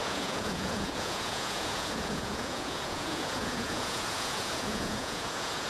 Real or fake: fake